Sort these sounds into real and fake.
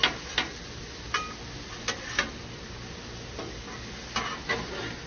real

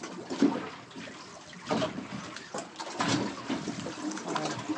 real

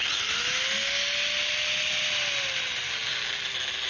real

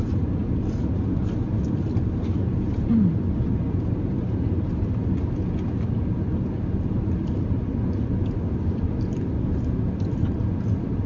real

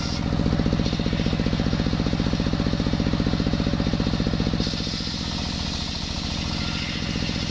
real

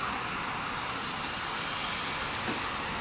real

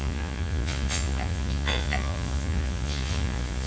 fake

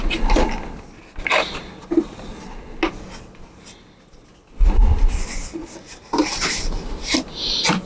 real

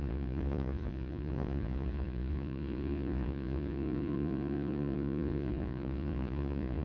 fake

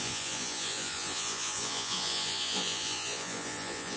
fake